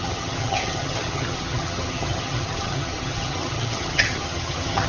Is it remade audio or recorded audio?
remade